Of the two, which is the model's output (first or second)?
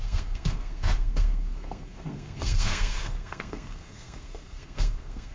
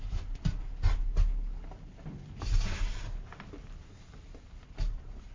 first